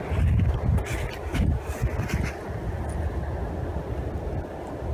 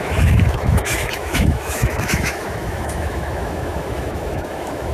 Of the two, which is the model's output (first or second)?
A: second